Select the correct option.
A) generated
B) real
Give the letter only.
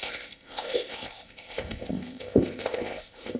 A